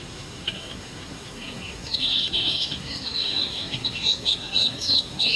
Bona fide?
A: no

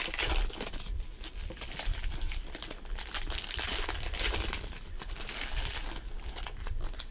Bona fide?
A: yes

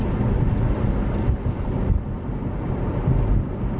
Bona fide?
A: yes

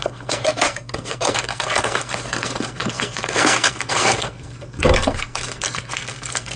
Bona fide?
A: no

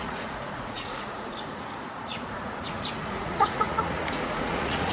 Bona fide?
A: no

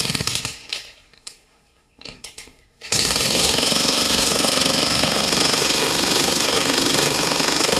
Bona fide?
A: no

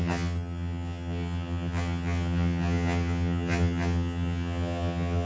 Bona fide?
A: no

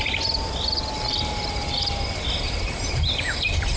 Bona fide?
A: yes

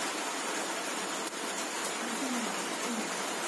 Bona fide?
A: yes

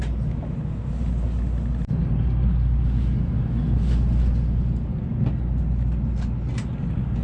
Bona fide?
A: yes